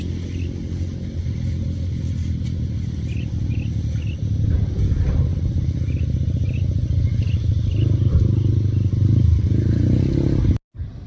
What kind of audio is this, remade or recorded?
recorded